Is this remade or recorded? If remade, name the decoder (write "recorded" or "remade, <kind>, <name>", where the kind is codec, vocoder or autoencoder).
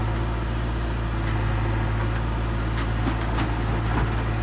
recorded